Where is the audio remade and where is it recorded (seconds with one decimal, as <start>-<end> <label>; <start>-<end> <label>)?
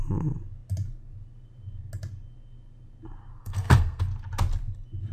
0.0-3.4 recorded; 3.4-4.0 remade; 4.0-5.1 recorded